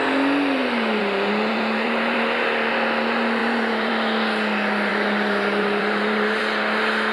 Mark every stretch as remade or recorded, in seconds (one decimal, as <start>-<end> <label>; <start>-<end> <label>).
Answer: 0.0-0.6 recorded; 0.6-2.7 remade; 2.7-3.4 recorded; 3.4-3.9 remade; 3.9-4.9 recorded; 4.9-6.4 remade; 6.4-7.1 recorded